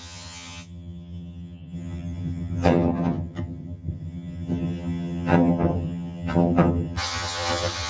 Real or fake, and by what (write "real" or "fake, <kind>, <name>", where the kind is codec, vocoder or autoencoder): fake, vocoder, HiFi-GAN